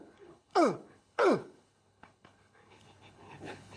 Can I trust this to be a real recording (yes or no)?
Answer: no